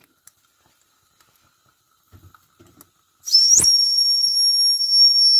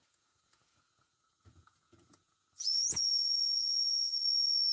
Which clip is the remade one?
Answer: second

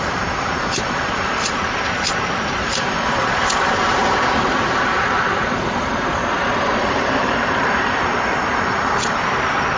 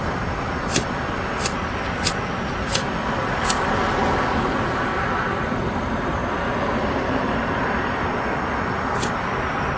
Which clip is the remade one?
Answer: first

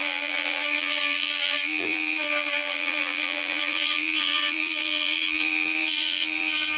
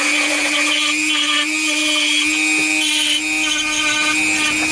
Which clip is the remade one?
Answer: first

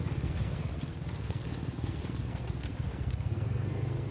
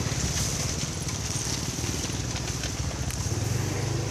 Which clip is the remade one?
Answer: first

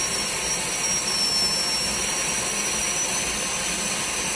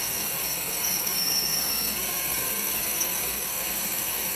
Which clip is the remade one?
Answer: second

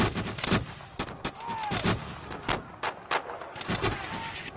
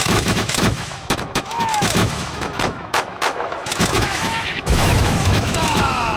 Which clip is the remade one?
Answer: second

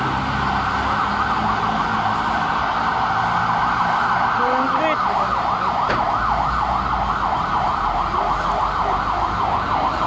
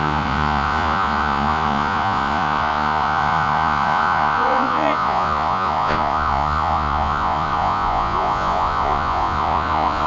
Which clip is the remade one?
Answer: second